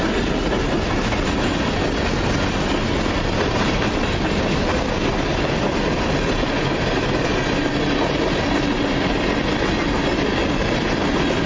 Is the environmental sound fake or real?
real